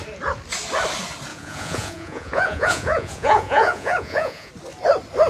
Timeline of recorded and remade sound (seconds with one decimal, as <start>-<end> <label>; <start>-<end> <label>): 0.0-1.3 recorded; 1.3-4.5 remade; 4.5-5.3 recorded